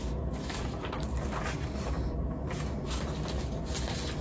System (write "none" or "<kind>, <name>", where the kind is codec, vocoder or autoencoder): none